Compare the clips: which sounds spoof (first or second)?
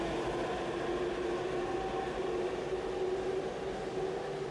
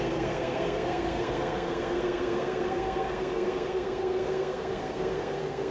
second